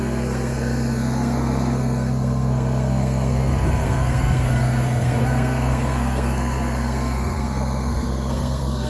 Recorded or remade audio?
remade